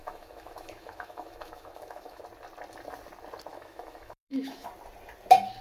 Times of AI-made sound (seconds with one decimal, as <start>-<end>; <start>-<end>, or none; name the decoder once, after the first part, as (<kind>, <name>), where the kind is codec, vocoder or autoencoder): 0.0-2.2 (autoencoder, DAC-VAE); 3.5-4.7